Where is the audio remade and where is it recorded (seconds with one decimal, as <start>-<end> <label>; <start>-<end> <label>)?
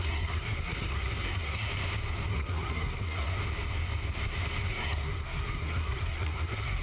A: 0.0-1.7 remade; 1.7-2.3 recorded; 2.3-3.4 remade; 3.4-4.7 recorded; 4.7-6.8 remade